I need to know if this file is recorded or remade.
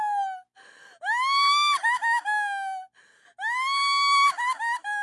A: recorded